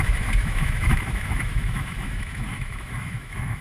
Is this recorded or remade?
remade